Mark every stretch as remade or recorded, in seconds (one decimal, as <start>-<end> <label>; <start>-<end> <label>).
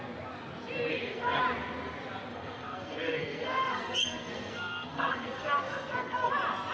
0.0-0.9 recorded; 0.9-1.4 remade; 1.4-2.3 recorded; 2.3-6.3 remade; 6.3-6.7 recorded